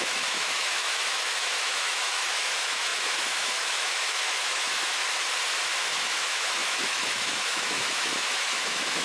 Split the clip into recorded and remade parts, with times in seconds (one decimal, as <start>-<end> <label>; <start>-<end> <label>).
0.0-5.0 remade; 5.0-5.8 recorded; 5.8-9.0 remade